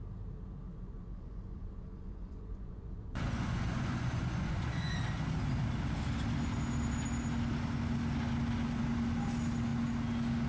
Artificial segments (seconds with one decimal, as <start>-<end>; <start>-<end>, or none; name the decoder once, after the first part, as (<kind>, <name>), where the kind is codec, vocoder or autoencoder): 0.7-4.9 (vocoder, Vocos)